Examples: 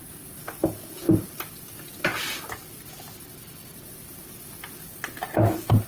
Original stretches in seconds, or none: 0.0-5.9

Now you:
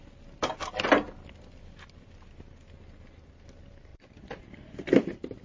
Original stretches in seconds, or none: 0.0-5.4

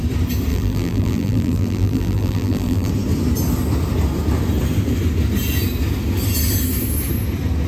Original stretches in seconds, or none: 0.0-0.5; 2.9-7.7

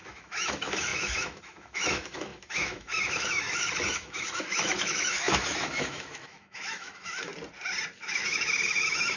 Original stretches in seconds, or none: 7.3-8.0

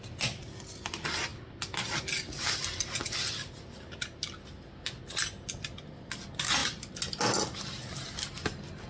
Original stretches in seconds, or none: 0.0-8.9

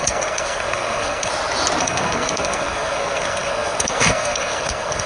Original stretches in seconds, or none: 1.3-1.8

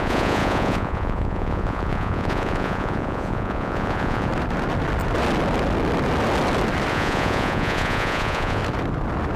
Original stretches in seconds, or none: 4.3-6.9; 8.6-9.4